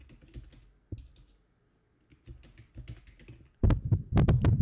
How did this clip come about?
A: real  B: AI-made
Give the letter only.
A